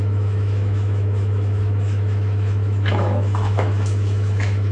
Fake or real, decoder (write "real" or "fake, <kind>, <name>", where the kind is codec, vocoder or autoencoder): fake, autoencoder, DAC-VAE